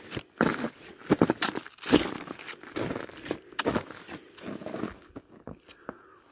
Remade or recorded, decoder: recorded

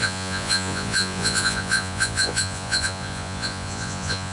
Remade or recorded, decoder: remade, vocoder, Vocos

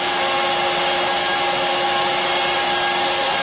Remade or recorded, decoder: recorded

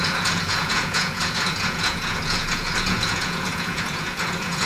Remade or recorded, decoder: remade, vocoder, Vocos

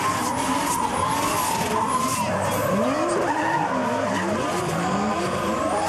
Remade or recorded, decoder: recorded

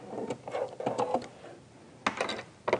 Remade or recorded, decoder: recorded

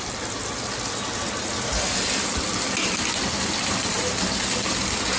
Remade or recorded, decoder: recorded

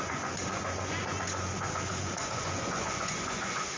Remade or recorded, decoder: remade, vocoder, Vocos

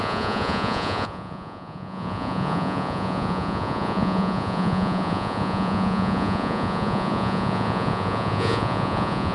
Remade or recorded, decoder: remade, vocoder, Vocos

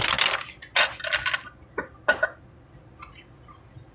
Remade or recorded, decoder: recorded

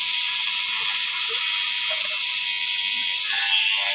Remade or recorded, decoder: recorded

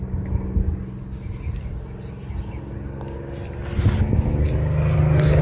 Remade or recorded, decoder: recorded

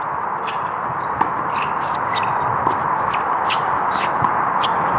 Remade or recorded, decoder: recorded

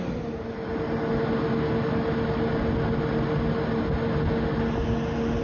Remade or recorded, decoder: recorded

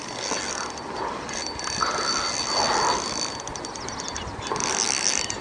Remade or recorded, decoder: recorded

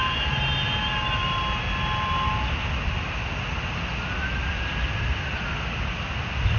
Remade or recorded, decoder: recorded